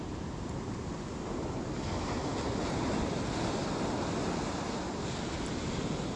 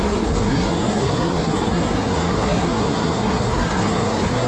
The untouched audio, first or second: first